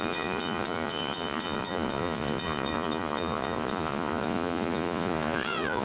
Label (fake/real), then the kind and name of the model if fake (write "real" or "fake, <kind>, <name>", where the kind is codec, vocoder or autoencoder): fake, vocoder, Vocos